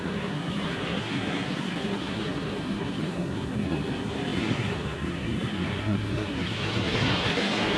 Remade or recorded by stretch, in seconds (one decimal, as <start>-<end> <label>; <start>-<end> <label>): 0.0-7.8 remade